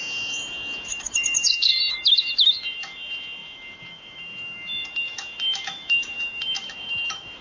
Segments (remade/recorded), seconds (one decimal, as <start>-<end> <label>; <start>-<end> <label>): 0.0-7.4 remade